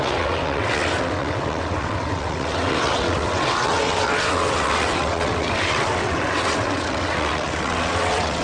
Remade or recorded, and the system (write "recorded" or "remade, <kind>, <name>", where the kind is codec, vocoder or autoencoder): remade, vocoder, WaveNeXt